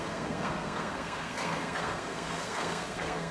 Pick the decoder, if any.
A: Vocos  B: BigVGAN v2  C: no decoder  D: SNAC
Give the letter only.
D